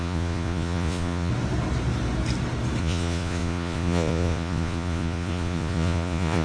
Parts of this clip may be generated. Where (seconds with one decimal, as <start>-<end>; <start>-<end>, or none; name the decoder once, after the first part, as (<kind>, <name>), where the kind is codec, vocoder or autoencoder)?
0.0-1.3 (vocoder, Vocos); 2.8-6.4